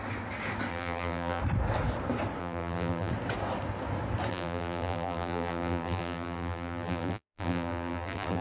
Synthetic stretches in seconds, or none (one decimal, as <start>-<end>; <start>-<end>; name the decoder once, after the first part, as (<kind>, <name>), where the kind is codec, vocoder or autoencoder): 0.7-1.4 (vocoder, BigVGAN v2); 2.4-3.1; 4.3-8.4